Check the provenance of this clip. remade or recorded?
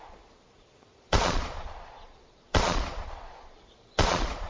remade